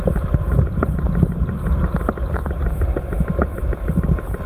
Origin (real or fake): real